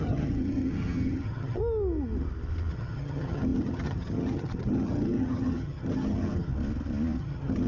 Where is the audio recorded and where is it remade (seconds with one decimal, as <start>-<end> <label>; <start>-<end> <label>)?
0.0-1.6 remade; 1.6-2.7 recorded; 2.7-6.5 remade; 6.5-7.2 recorded; 7.2-7.7 remade